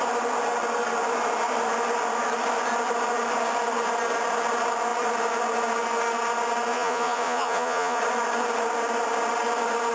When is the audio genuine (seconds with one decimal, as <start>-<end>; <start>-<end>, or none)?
0.0-6.7; 8.0-9.9